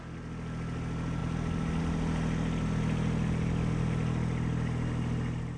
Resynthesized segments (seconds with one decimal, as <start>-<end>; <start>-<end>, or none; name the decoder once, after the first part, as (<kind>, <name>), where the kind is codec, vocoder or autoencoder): none